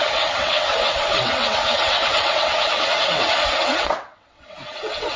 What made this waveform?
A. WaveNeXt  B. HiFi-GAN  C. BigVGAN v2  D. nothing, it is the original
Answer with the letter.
A